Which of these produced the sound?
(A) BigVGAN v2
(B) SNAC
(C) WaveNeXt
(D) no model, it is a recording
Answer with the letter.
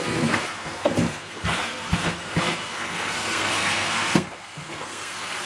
B